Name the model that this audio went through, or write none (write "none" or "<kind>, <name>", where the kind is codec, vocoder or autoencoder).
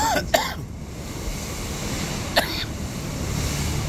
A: none